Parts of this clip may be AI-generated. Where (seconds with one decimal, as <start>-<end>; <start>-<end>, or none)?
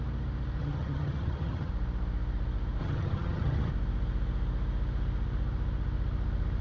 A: 0.6-1.7; 2.8-3.7